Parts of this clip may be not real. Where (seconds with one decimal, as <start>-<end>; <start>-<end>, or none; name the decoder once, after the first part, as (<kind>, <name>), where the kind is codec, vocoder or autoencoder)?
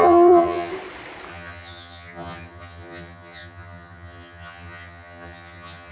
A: 0.0-0.7 (vocoder, HiFi-GAN); 1.3-5.9